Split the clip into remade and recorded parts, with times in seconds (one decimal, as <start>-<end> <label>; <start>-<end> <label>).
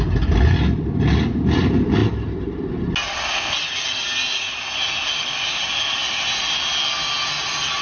0.0-2.0 recorded; 2.0-2.7 remade; 2.7-7.8 recorded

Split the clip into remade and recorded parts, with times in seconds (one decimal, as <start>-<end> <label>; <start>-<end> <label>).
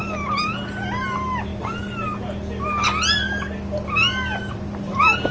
0.0-5.3 recorded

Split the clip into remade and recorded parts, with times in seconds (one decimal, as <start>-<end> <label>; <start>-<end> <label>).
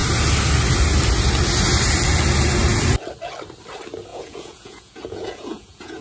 0.0-4.1 recorded; 4.1-6.0 remade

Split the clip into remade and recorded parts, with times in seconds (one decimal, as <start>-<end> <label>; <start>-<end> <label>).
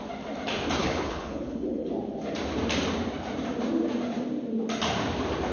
0.0-0.8 recorded; 0.8-1.9 remade; 1.9-5.5 recorded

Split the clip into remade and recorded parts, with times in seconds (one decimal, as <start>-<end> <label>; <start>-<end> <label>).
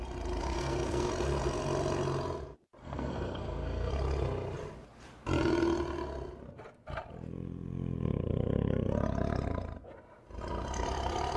0.0-0.4 recorded; 0.4-1.1 remade; 1.1-2.8 recorded; 2.8-3.9 remade; 3.9-11.4 recorded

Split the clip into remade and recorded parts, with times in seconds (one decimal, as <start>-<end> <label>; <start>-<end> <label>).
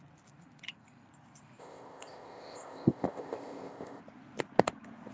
0.0-1.6 recorded; 1.6-4.0 remade; 4.0-5.1 recorded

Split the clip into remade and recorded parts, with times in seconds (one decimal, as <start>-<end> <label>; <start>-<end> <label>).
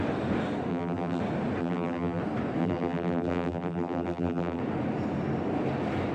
0.0-0.7 recorded; 0.7-1.2 remade; 1.2-1.6 recorded; 1.6-2.2 remade; 2.2-2.6 recorded; 2.6-4.6 remade; 4.6-6.1 recorded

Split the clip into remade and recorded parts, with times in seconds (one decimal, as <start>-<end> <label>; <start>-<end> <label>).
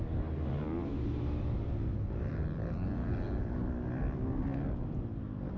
0.0-2.3 recorded; 2.3-4.0 remade; 4.0-5.6 recorded